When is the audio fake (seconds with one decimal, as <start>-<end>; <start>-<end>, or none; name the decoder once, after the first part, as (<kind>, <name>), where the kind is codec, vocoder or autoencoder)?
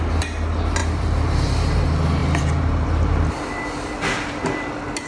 0.8-1.8 (vocoder, BigVGAN v2); 2.2-4.4